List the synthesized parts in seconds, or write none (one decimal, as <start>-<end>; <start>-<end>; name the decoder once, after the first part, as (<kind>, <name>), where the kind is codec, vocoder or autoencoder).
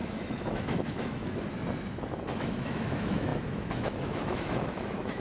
0.0-1.2 (autoencoder, DAC-VAE); 2.4-5.2